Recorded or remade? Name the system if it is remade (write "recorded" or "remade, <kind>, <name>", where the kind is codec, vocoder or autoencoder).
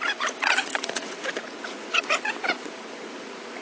remade, vocoder, Vocos